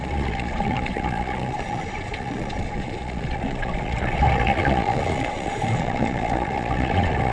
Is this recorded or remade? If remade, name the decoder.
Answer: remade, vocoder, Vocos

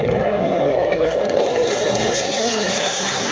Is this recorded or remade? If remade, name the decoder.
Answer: remade, codec, SNAC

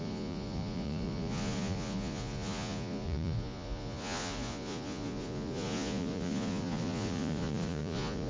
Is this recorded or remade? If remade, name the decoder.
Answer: remade, vocoder, Vocos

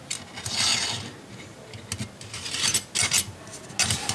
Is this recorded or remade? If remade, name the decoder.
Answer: recorded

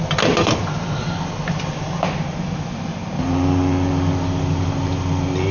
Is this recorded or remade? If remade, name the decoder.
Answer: recorded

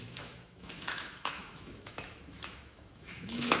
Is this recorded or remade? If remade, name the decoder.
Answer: remade, autoencoder, DAC-VAE